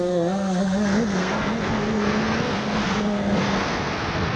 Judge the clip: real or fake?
fake